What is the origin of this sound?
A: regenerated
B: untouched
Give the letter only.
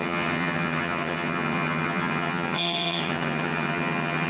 A